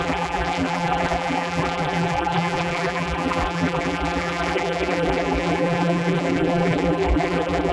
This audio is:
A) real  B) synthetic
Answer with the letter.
B